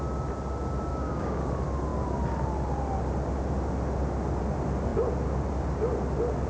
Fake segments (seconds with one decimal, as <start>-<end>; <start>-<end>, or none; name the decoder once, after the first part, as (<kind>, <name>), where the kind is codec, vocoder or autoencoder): 0.9-1.5 (codec, DAC)